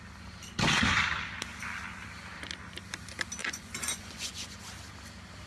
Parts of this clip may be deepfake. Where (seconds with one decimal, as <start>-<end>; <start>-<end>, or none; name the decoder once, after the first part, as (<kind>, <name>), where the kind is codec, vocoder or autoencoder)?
3.4-4.6 (vocoder, Vocos)